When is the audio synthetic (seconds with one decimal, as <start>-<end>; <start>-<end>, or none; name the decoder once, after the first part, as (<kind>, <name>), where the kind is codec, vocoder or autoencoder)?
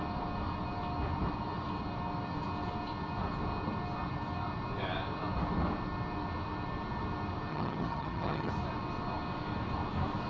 7.5-8.5 (vocoder, HiFi-GAN)